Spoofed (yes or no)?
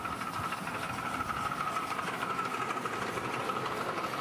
yes